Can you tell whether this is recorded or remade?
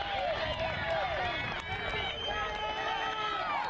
recorded